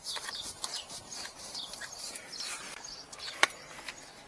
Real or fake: fake